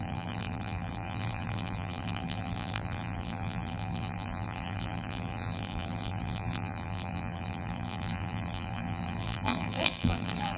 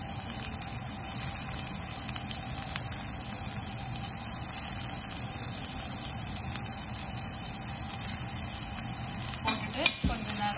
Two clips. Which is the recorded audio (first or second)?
second